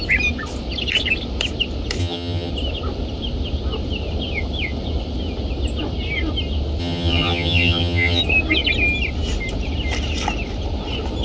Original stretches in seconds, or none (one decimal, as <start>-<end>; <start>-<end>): 0.0-2.0; 2.5-6.8; 8.2-11.2